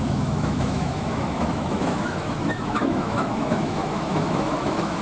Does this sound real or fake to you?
fake